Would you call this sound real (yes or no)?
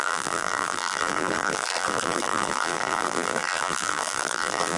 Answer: no